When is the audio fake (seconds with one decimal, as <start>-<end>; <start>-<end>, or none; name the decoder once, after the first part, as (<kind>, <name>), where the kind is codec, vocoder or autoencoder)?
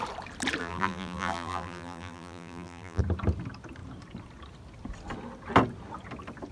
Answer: 0.6-3.0 (vocoder, BigVGAN v2)